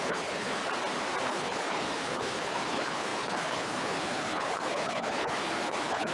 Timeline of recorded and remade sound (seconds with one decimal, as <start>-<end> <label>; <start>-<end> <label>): 0.0-0.6 remade; 0.6-1.2 recorded; 1.2-6.1 remade